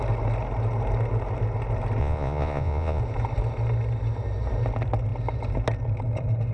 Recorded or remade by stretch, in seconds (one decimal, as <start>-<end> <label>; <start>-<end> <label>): 0.0-2.0 recorded; 2.0-3.0 remade; 3.0-6.5 recorded